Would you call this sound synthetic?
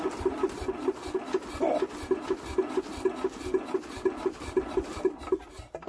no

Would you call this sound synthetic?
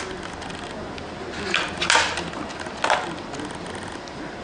no